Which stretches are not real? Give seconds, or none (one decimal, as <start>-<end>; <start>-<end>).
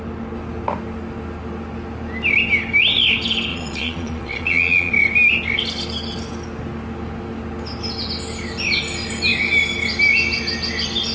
3.5-4.9